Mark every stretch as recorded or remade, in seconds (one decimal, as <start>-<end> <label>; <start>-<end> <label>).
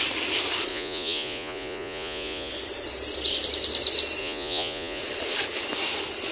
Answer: 0.0-0.7 recorded; 0.7-2.5 remade; 2.5-4.2 recorded; 4.2-5.0 remade; 5.0-6.3 recorded